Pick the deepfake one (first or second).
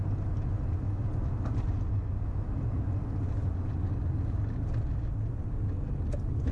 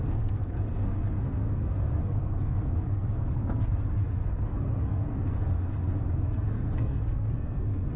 second